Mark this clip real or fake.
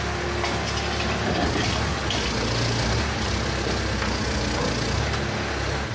real